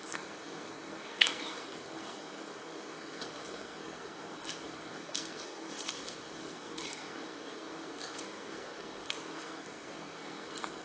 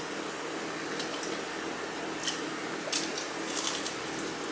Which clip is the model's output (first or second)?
first